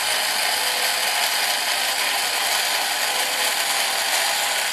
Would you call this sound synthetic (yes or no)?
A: no